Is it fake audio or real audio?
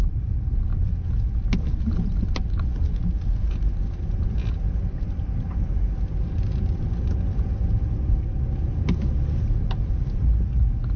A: real